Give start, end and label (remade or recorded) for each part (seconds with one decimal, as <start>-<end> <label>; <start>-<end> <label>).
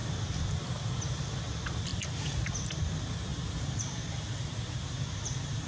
0.0-1.9 recorded; 1.9-2.7 remade; 2.7-3.3 recorded; 3.3-5.7 remade